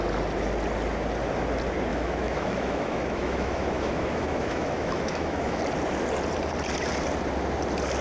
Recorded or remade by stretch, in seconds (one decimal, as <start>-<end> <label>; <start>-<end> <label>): 0.0-1.9 recorded; 1.9-5.6 remade; 5.6-8.0 recorded